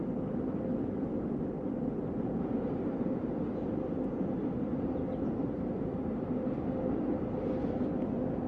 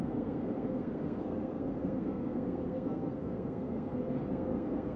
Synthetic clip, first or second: second